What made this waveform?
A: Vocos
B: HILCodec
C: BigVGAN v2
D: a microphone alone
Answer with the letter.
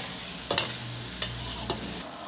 D